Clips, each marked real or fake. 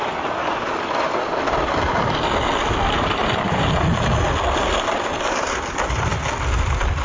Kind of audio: real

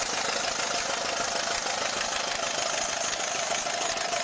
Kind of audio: real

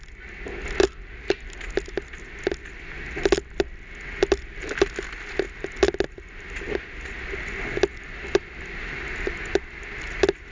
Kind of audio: real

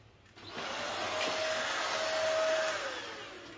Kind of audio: real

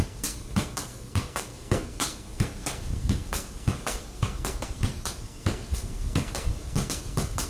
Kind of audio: fake